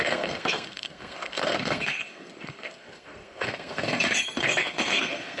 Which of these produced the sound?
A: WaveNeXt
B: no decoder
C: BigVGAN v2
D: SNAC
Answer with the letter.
D